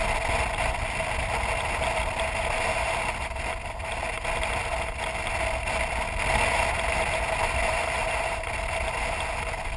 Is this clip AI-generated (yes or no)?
no